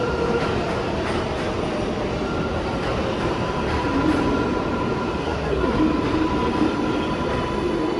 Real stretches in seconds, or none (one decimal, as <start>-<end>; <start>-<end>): 0.0-5.2; 5.8-8.0